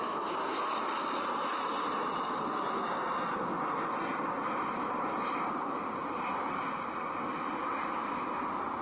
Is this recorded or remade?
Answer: recorded